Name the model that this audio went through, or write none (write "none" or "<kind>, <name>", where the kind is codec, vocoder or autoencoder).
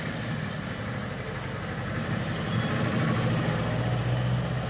none